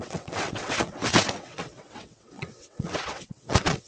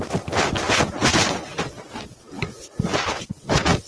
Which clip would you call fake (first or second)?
first